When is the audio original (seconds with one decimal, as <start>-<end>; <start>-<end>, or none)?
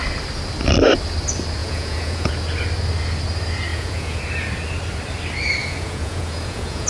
0.0-1.6; 2.3-3.7; 4.2-5.6